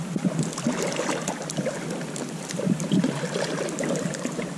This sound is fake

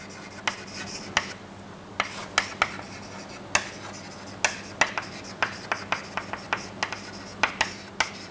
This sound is real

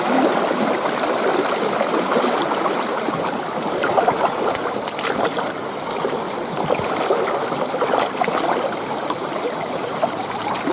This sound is real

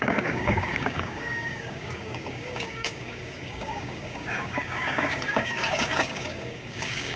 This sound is fake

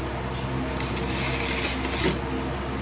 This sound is real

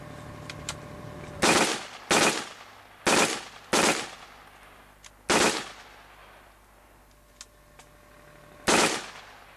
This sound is real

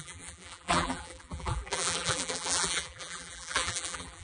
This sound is fake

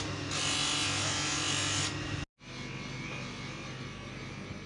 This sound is real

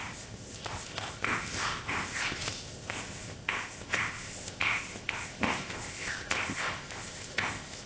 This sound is fake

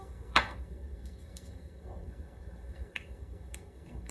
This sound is fake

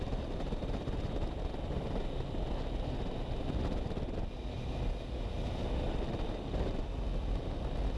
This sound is real